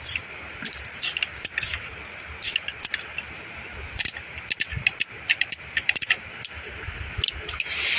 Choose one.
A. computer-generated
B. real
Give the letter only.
A